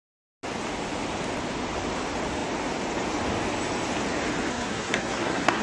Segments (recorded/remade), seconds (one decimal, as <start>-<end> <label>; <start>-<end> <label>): 0.0-4.5 recorded; 4.5-5.6 remade